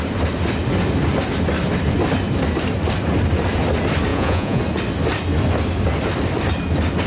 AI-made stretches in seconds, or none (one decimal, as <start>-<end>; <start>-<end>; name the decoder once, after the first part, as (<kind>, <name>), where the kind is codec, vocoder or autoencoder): 4.1-4.6 (vocoder, Vocos)